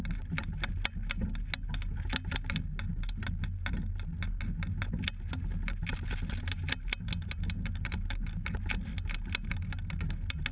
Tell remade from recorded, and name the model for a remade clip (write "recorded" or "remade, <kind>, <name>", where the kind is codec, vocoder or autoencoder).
recorded